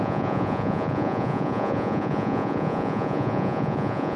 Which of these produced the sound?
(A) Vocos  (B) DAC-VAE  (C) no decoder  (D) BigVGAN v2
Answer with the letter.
A